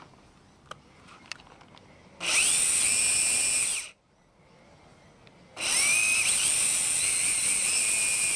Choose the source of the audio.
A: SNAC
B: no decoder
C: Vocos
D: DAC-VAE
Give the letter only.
B